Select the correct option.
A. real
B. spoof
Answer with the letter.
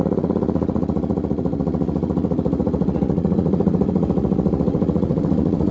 B